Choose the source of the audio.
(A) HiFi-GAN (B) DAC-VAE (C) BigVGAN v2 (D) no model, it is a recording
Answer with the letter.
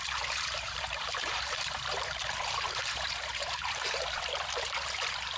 C